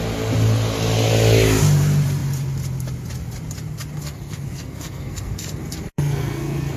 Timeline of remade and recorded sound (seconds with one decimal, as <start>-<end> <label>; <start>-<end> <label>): 0.0-4.0 recorded; 4.0-6.8 remade

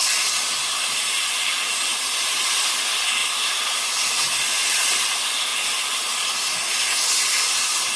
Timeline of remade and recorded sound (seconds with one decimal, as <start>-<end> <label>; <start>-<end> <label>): 0.0-2.5 remade; 2.5-3.2 recorded; 3.2-4.9 remade; 4.9-5.5 recorded; 5.5-6.1 remade; 6.1-8.0 recorded

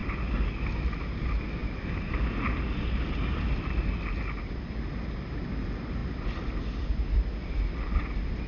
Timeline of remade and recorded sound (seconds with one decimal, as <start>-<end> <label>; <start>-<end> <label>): 0.0-8.5 recorded

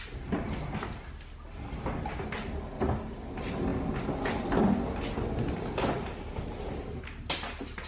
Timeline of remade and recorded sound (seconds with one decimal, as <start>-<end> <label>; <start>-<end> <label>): 0.0-7.9 recorded